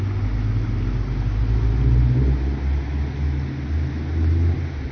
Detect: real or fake real